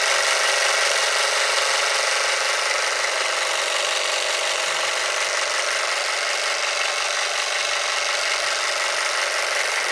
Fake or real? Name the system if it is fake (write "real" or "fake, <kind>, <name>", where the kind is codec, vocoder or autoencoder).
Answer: real